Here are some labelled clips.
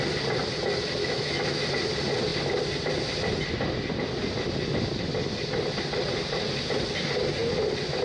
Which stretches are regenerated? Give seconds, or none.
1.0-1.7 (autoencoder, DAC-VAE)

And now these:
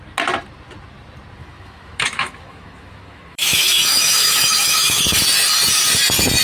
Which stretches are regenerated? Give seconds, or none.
1.4-5.2 (autoencoder, DAC-VAE)

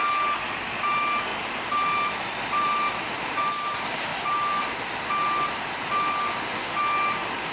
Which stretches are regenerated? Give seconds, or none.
none

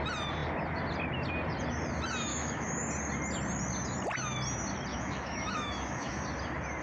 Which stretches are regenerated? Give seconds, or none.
2.3-2.9 (autoencoder, DAC-VAE); 4.9-6.2

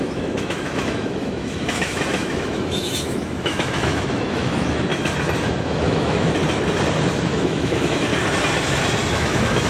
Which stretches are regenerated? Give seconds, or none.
0.0-4.9 (autoencoder, DAC-VAE); 5.5-6.4; 7.2-8.1; 9.1-9.7

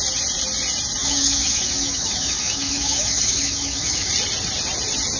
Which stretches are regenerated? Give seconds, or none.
1.0-4.1 (autoencoder, DAC-VAE)

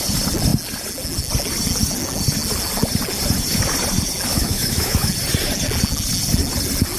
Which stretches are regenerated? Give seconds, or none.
4.3-5.1 (autoencoder, DAC-VAE)

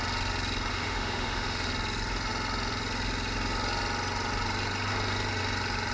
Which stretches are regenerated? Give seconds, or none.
0.7-1.7 (autoencoder, DAC-VAE)